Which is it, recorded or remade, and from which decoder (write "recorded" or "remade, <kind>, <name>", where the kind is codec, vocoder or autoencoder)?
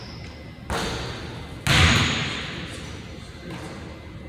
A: recorded